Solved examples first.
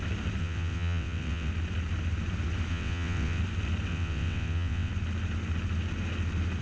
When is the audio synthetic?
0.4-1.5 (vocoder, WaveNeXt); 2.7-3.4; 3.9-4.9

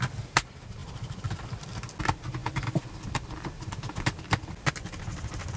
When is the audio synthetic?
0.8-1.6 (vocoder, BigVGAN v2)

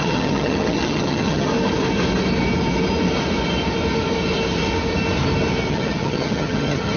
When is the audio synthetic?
0.0-1.5 (vocoder, HiFi-GAN); 5.7-7.0